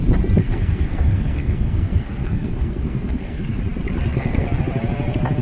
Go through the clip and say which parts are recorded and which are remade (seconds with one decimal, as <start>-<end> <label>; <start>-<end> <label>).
0.0-0.4 recorded; 0.4-3.6 remade; 3.6-4.1 recorded; 4.1-4.6 remade; 4.6-5.4 recorded